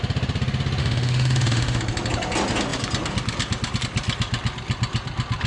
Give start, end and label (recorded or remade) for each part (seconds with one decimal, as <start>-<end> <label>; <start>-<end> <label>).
0.0-0.8 recorded; 0.8-1.8 remade; 1.8-5.5 recorded